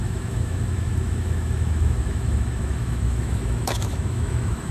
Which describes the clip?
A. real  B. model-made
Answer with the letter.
B